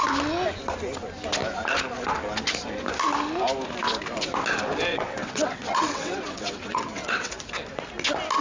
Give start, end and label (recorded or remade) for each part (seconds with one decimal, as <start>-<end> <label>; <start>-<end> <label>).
0.0-4.9 recorded; 4.9-7.3 remade; 7.3-8.4 recorded